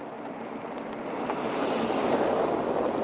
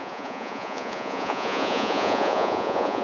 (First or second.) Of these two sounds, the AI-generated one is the second